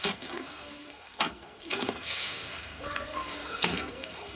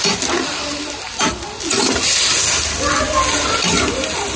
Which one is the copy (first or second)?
first